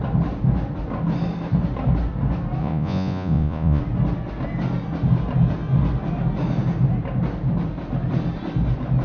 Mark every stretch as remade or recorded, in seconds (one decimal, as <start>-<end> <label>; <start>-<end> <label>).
0.0-2.6 recorded; 2.6-3.8 remade; 3.8-9.0 recorded